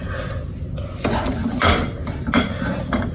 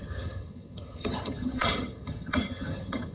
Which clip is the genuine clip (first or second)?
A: first